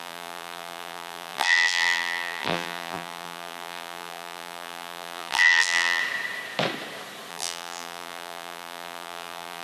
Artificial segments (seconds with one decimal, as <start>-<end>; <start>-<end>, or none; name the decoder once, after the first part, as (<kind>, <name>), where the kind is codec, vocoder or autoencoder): 0.0-6.0 (vocoder, BigVGAN v2); 7.3-9.6